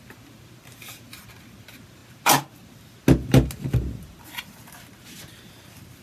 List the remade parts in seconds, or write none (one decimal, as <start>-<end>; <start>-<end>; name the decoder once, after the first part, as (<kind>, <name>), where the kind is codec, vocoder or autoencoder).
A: none